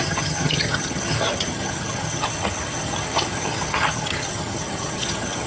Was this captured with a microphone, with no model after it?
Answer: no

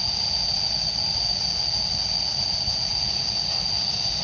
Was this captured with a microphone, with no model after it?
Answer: yes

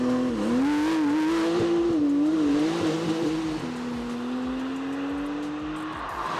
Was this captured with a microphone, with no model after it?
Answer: yes